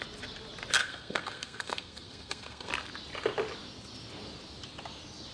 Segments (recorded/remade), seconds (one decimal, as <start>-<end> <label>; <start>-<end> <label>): 0.0-0.8 recorded; 0.8-2.7 remade; 2.7-5.3 recorded